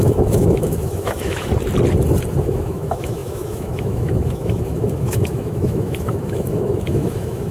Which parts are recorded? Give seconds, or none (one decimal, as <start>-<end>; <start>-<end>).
1.5-2.4